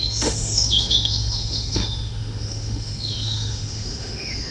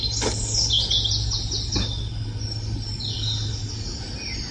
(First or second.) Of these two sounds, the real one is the second